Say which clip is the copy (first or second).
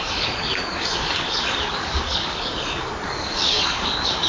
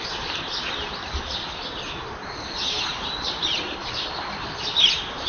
first